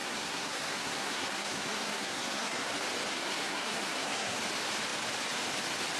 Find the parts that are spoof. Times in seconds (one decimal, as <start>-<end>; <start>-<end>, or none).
0.0-2.7; 3.1-4.4